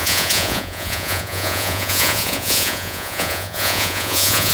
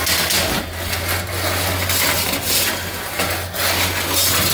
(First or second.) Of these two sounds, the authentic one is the second